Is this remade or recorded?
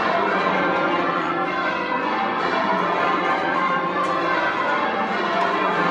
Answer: remade